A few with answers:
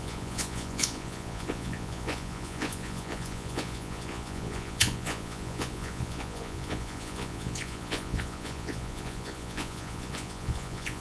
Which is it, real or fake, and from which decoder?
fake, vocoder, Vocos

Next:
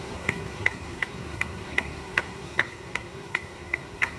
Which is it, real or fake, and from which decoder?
fake, codec, SNAC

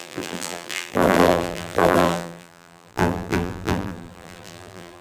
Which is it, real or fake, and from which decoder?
fake, vocoder, BigVGAN v2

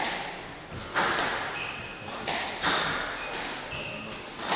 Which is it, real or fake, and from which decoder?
real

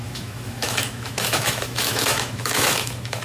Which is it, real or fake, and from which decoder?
fake, autoencoder, DAC-VAE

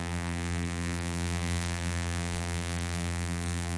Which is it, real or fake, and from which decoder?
fake, vocoder, BigVGAN v2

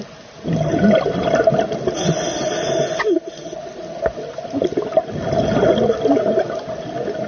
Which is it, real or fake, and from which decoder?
real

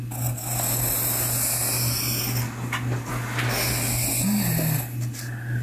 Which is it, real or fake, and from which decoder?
real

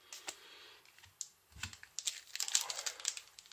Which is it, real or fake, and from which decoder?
real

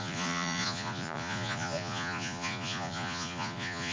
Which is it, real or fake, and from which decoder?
fake, vocoder, Vocos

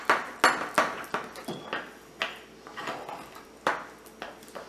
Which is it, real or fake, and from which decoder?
real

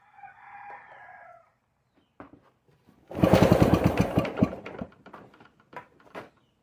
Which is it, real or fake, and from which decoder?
fake, vocoder, BigVGAN v2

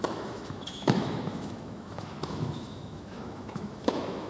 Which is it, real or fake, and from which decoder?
fake, autoencoder, DAC-VAE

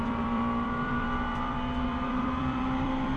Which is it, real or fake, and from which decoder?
fake, vocoder, BigVGAN v2